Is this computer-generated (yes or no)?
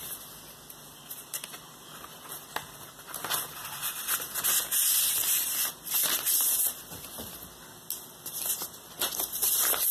no